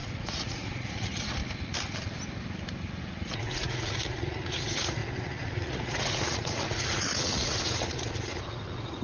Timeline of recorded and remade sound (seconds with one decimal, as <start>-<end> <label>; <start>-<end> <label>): 0.0-1.4 remade; 1.4-3.0 recorded; 3.0-9.0 remade